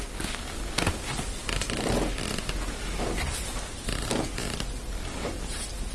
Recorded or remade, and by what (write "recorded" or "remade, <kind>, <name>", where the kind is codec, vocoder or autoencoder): recorded